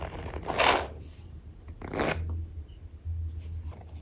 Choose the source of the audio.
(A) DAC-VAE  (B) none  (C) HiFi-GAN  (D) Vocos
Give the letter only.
B